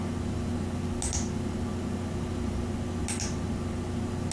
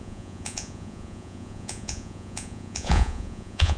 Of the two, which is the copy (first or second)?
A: second